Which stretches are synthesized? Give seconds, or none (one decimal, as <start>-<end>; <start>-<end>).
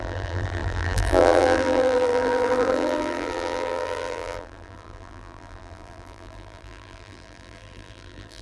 0.0-8.4